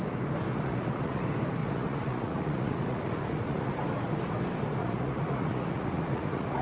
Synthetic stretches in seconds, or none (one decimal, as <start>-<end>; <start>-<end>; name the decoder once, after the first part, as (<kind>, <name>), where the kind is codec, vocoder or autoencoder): 0.5-1.2 (vocoder, Vocos); 1.6-3.8; 4.8-6.6